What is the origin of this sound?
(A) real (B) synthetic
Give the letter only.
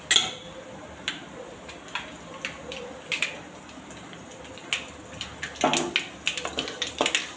A